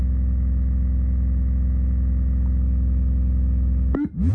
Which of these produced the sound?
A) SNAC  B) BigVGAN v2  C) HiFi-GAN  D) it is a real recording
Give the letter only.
D